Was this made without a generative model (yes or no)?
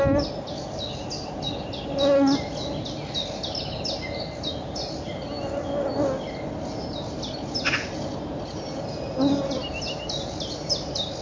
yes